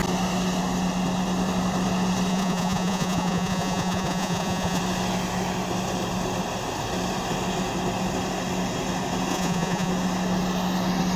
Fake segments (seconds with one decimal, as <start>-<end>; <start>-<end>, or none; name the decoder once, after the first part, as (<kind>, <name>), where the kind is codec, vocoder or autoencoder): 2.3-4.8 (vocoder, Vocos); 9.3-9.9